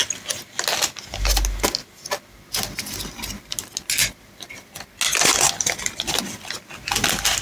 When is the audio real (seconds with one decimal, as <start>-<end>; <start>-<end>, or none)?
0.0-7.4